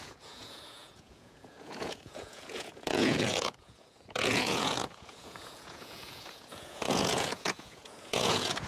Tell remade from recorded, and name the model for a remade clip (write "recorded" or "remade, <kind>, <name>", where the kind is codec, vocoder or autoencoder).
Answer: remade, vocoder, Vocos